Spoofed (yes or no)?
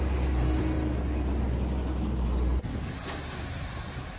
no